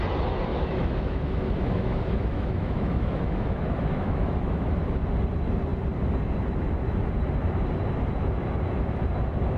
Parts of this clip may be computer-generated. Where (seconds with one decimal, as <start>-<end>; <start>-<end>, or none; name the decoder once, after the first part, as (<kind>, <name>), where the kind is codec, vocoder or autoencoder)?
0.5-4.8 (autoencoder, DAC-VAE)